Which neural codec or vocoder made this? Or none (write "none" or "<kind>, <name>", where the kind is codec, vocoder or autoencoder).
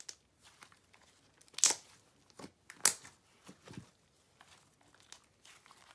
none